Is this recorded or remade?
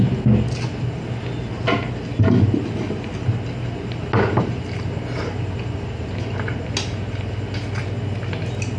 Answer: recorded